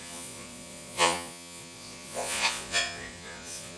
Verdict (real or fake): fake